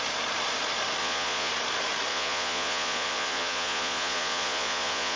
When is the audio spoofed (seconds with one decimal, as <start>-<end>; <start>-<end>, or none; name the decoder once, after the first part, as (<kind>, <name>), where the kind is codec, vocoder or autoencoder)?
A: 1.0-1.5 (vocoder, Vocos); 2.1-5.2